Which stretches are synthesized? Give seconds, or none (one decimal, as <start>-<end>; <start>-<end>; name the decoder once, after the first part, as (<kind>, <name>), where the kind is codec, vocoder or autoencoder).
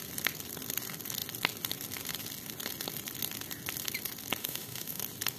4.4-5.0 (autoencoder, DAC-VAE)